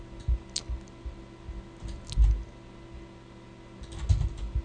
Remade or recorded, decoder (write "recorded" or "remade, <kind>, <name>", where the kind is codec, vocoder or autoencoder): recorded